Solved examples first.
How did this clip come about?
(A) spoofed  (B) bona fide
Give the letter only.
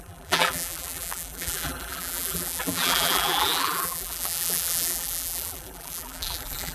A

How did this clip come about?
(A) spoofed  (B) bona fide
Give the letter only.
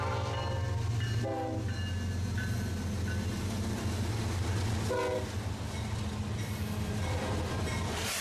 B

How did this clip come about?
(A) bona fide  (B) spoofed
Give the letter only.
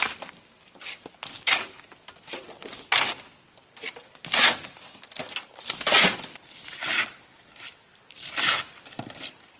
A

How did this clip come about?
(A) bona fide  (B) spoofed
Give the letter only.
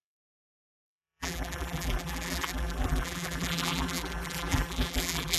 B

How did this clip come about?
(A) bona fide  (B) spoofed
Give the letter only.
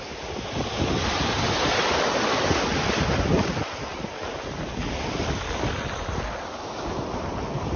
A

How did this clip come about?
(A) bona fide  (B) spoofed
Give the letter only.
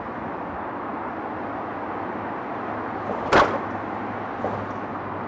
A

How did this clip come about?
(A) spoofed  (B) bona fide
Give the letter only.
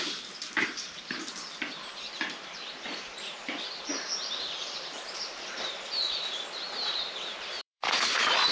A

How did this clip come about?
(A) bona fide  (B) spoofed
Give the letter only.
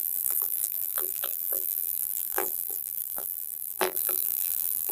B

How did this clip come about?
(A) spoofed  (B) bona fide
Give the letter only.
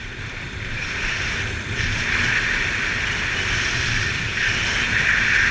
B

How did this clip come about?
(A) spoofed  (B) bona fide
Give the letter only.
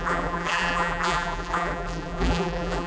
A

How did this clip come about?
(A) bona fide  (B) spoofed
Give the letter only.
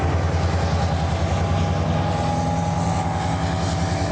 A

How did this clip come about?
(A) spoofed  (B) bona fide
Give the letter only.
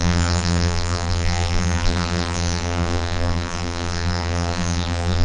A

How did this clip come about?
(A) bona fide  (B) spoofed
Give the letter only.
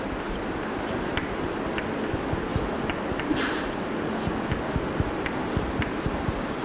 A